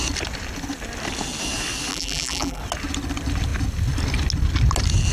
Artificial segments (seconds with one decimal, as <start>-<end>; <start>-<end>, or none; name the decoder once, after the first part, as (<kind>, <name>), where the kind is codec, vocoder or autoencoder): 1.9-2.6 (vocoder, BigVGAN v2)